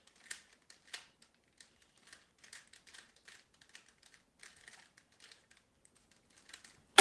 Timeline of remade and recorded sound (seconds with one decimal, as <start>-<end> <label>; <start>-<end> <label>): 0.0-7.0 recorded

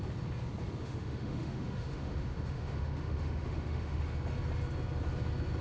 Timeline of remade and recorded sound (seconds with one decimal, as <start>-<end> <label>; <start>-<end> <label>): 0.0-0.8 recorded; 0.8-4.0 remade; 4.0-5.6 recorded